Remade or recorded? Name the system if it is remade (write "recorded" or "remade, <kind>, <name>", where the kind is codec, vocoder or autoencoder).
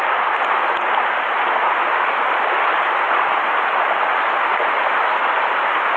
recorded